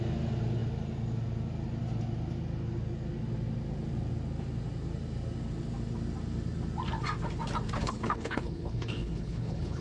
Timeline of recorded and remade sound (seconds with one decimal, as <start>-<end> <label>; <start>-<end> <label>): 0.0-7.8 recorded; 7.8-9.8 remade